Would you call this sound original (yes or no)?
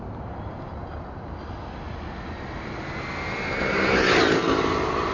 yes